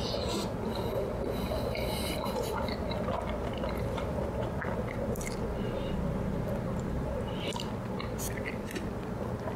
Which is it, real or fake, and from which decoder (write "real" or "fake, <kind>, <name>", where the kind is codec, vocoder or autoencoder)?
real